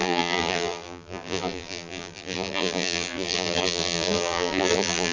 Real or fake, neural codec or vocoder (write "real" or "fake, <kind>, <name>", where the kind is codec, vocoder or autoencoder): fake, vocoder, BigVGAN v2